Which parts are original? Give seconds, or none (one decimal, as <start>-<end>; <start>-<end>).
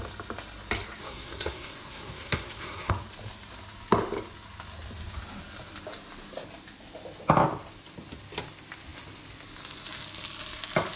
0.0-1.0; 2.9-11.0